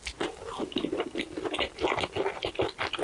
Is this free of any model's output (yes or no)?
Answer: yes